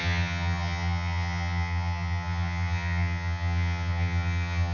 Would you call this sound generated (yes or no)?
yes